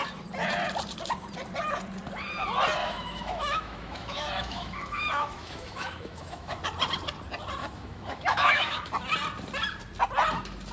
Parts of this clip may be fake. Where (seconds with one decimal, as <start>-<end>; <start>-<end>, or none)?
2.8-6.6; 7.6-8.9